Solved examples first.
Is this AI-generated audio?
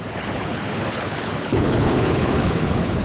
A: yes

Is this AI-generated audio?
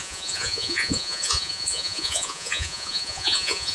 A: yes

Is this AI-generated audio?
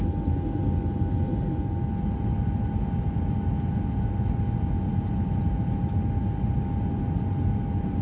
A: no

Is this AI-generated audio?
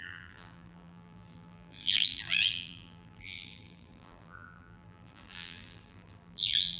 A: yes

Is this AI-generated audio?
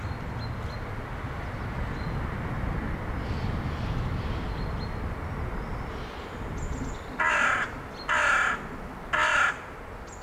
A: no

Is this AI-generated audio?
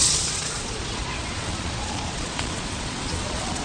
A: yes